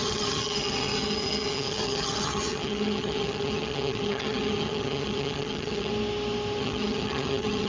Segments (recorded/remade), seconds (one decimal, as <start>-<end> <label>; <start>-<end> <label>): 0.0-5.9 remade; 5.9-6.6 recorded; 6.6-7.7 remade